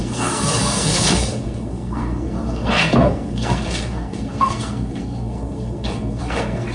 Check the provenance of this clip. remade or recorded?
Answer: remade